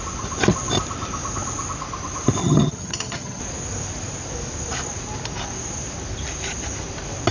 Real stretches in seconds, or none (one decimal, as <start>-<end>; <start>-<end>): 0.0-2.4; 3.4-7.3